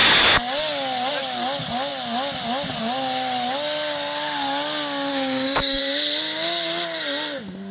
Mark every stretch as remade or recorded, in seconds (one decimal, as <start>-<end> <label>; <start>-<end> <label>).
0.0-5.1 recorded; 5.1-5.8 remade; 5.8-7.7 recorded